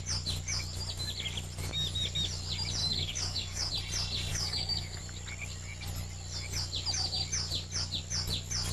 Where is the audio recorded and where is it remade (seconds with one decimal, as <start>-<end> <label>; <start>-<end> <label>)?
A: 0.0-2.8 recorded; 2.8-3.7 remade; 3.7-4.3 recorded; 4.3-5.0 remade; 5.0-8.7 recorded